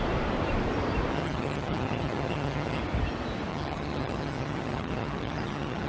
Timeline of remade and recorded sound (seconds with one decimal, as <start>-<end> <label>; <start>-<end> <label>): 0.0-1.1 recorded; 1.1-2.8 remade; 2.8-3.5 recorded; 3.5-5.9 remade